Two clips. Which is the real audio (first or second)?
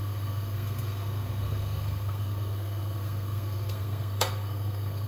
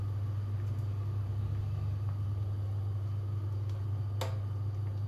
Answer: second